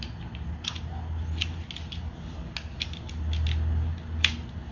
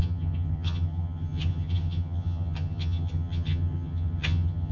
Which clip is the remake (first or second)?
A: second